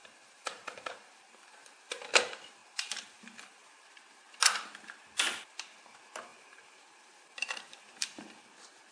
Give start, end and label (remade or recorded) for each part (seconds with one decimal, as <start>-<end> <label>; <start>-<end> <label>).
0.0-2.1 remade; 2.1-2.6 recorded; 2.6-4.0 remade; 4.0-6.3 recorded; 6.3-8.5 remade; 8.5-8.9 recorded